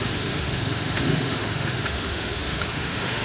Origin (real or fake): fake